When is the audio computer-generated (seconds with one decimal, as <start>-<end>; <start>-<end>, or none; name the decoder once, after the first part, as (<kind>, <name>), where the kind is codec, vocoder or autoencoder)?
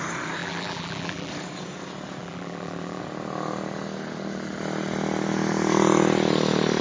0.4-1.3 (vocoder, BigVGAN v2); 2.2-3.0